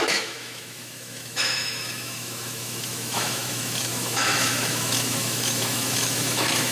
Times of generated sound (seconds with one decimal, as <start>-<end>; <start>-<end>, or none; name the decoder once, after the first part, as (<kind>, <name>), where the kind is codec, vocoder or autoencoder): 0.0-6.7 (autoencoder, DAC-VAE)